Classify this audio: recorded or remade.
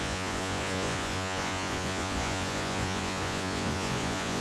remade